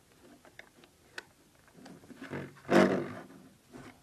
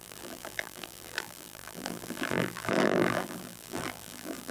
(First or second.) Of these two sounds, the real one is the first